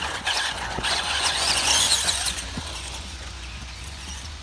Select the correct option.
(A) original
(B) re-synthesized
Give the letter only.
B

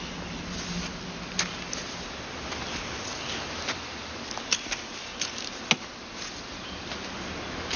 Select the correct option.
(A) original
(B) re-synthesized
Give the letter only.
A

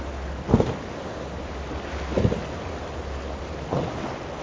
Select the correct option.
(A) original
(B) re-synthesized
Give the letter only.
A